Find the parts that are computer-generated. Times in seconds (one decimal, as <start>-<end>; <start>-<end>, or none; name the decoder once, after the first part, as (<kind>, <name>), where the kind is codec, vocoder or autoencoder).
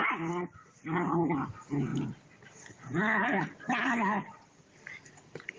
0.0-1.2 (vocoder, BigVGAN v2); 1.9-5.6